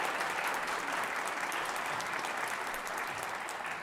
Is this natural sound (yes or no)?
yes